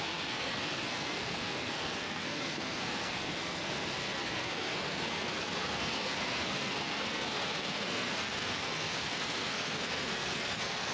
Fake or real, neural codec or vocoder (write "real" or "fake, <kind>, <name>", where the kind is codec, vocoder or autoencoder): fake, codec, SNAC